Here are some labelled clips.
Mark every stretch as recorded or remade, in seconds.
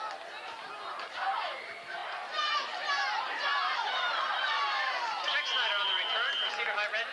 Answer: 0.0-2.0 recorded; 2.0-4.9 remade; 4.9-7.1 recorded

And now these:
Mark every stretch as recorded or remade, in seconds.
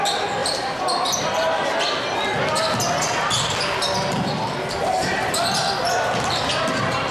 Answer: 0.0-0.4 recorded; 0.4-1.7 remade; 1.7-7.1 recorded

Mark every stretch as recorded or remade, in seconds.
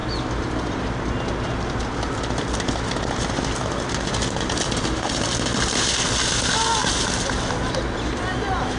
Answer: 0.0-6.6 recorded; 6.6-7.1 remade; 7.1-8.8 recorded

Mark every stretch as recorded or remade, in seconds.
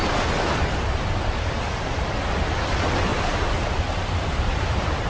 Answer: 0.0-3.1 recorded; 3.1-5.1 remade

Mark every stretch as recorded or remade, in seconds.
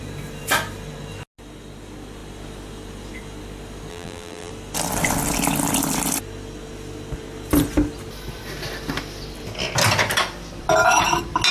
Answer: 0.0-3.9 recorded; 3.9-4.5 remade; 4.5-11.5 recorded